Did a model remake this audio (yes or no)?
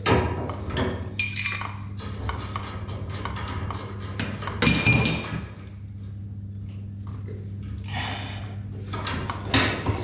no